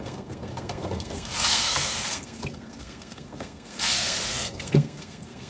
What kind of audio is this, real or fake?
fake